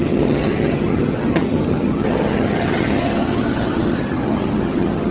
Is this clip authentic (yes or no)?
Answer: no